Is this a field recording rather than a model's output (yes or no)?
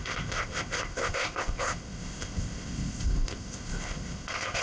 no